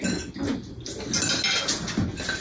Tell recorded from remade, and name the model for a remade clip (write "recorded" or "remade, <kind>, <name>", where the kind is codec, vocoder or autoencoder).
recorded